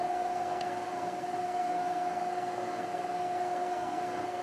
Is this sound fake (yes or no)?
yes